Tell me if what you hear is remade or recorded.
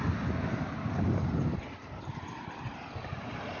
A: recorded